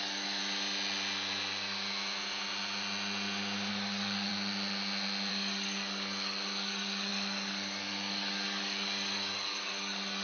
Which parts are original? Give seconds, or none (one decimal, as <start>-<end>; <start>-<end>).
0.4-3.7; 4.3-5.3